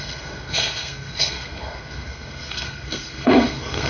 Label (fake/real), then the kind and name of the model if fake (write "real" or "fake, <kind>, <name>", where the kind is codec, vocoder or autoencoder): fake, codec, SNAC